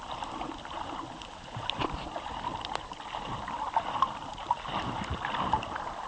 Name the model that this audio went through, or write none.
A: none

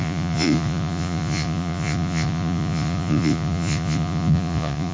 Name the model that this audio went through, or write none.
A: vocoder, Vocos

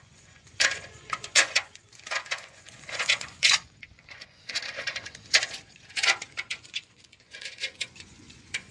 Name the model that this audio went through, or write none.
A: vocoder, Vocos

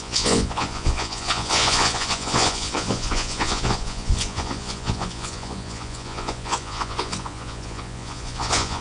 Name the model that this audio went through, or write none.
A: vocoder, Vocos